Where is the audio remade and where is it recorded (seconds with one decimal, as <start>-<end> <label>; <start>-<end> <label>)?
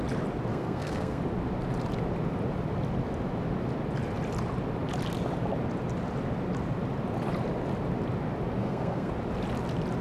0.0-0.5 recorded; 0.5-1.2 remade; 1.2-8.6 recorded; 8.6-9.1 remade; 9.1-10.0 recorded